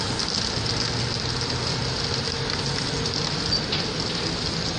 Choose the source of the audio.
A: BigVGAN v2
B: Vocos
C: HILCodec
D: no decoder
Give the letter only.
D